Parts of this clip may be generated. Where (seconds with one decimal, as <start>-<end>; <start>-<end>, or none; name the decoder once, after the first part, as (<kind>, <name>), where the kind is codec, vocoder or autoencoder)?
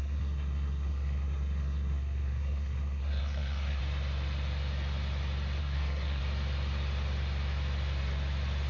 0.0-3.8 (codec, SNAC); 5.6-6.2